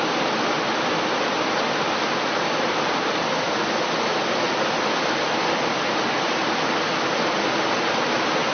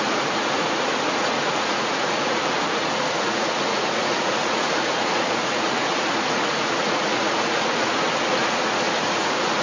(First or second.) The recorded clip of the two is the first